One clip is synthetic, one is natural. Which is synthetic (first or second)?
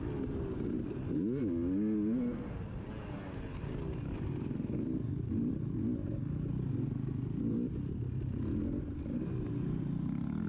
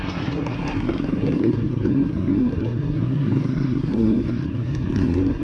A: second